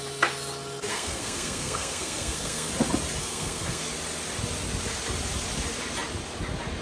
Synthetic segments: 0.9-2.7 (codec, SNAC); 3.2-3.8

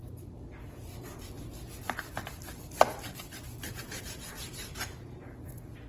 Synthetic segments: 3.8-5.5 (vocoder, BigVGAN v2)

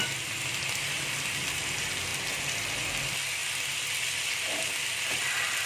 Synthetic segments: none

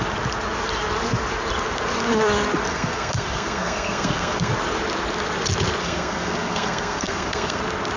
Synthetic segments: 2.7-4.5 (codec, SNAC); 5.8-7.6

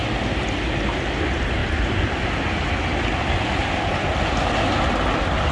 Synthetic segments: none

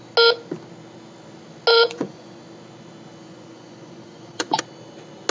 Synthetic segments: 1.7-2.4 (vocoder, Vocos); 3.2-4.6

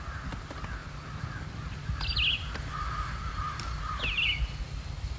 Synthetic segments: none